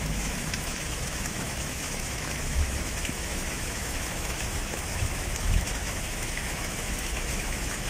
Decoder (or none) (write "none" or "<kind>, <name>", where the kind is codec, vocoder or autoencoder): autoencoder, DAC-VAE